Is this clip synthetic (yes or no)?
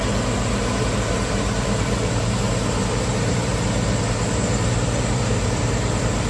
yes